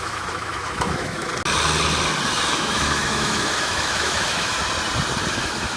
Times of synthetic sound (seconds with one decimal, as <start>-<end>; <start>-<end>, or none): 0.0-1.3; 2.5-4.6; 5.3-5.8